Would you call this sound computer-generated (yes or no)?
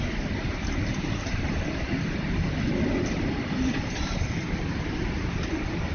yes